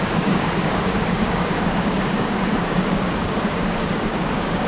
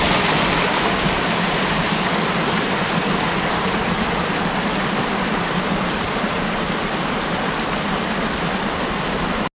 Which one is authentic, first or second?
second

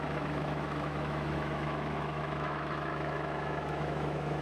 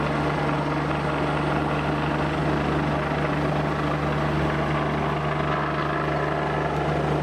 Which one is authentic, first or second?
second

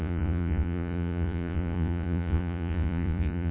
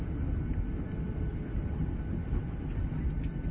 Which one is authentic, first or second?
second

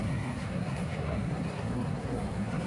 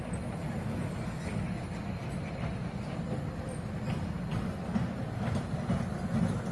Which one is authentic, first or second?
second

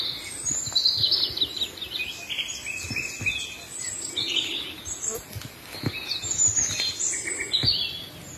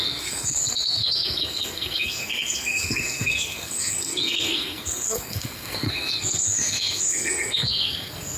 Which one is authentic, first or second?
first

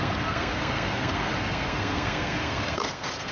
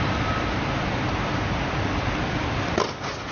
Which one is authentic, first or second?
second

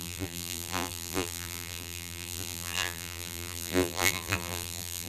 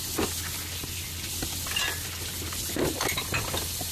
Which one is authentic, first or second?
second